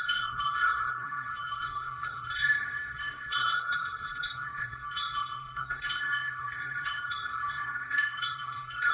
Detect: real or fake fake